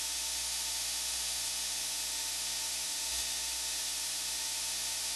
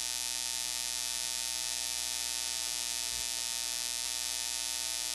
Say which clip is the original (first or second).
second